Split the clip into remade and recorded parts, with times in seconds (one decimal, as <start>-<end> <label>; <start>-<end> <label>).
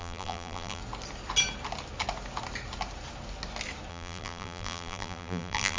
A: 0.0-0.8 remade; 0.8-3.9 recorded; 3.9-5.8 remade